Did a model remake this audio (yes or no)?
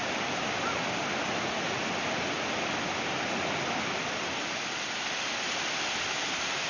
no